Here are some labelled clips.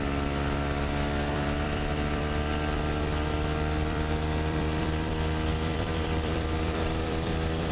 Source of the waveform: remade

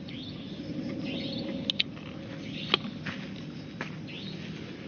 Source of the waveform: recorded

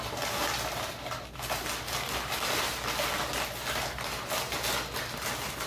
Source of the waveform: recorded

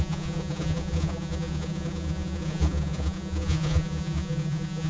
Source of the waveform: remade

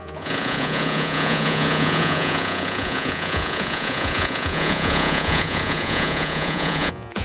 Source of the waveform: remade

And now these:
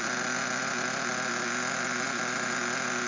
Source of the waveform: recorded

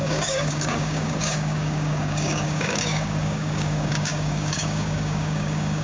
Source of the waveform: remade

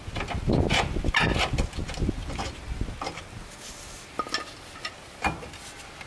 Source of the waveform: recorded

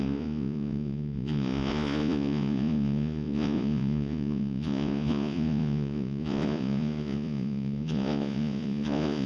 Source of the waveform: remade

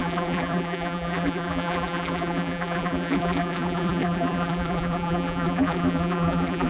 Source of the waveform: remade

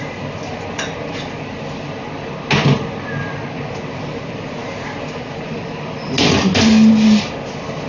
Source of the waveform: recorded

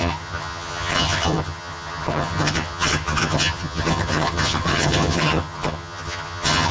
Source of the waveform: remade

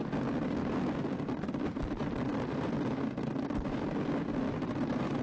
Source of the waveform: recorded